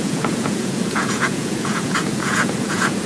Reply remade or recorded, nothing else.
remade